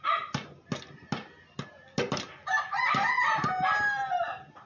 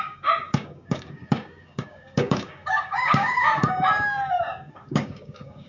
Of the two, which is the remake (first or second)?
second